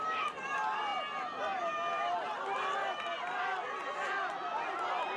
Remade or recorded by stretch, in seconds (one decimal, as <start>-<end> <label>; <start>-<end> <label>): 0.0-5.2 recorded